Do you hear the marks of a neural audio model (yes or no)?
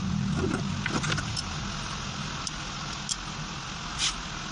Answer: no